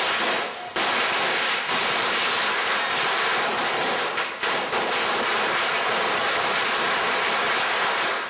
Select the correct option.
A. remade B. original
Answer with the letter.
B